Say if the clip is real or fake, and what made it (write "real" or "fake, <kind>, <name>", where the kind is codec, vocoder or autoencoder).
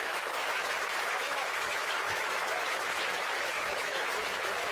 fake, autoencoder, DAC-VAE